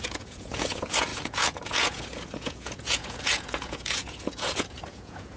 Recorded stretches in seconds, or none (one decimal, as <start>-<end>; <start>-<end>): none